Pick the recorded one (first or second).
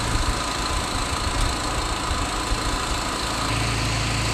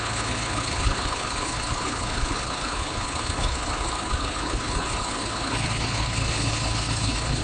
first